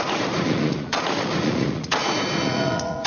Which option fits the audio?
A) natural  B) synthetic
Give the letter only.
B